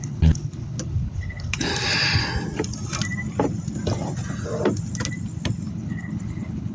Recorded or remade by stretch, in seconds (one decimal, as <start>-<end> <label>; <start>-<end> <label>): 0.0-1.7 remade; 1.7-5.7 recorded; 5.7-6.7 remade